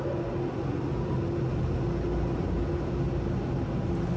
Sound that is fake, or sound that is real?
real